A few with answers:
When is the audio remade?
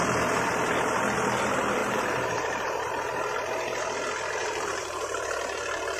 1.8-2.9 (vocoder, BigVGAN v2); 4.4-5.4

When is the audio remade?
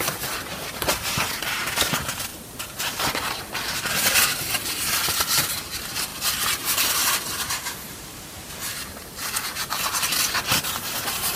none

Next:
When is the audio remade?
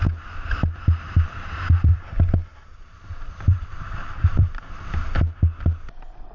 1.9-4.6 (vocoder, BigVGAN v2)